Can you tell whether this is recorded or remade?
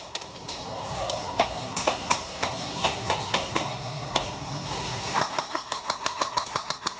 remade